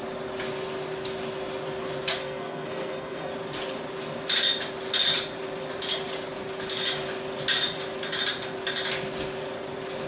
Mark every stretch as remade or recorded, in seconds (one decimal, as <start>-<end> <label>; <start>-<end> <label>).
0.0-2.2 recorded; 2.2-3.3 remade; 3.3-10.1 recorded